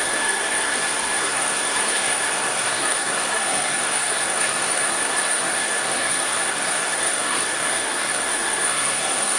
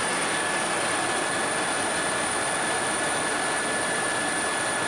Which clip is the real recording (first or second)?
second